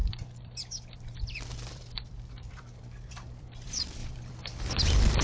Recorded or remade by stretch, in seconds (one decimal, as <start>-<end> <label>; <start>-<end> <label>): 0.0-5.2 remade